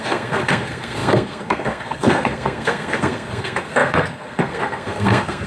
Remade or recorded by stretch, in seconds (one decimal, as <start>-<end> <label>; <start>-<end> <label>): 0.0-5.5 remade